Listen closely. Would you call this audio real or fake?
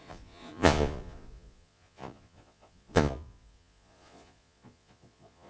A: fake